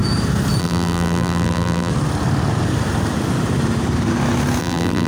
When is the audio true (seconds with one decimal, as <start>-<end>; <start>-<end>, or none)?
0.0-0.6; 1.9-4.6